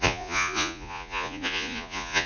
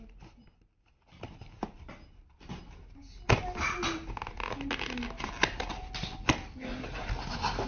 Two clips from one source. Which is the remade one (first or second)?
first